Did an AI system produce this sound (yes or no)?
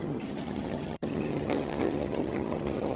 yes